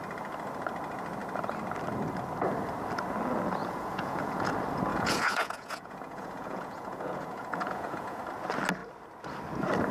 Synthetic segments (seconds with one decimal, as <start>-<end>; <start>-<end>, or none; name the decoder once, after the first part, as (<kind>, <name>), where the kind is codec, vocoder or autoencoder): 3.6-4.5 (vocoder, Vocos); 4.9-8.2